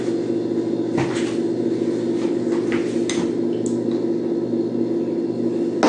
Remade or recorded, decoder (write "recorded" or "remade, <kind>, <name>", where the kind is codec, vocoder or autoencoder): recorded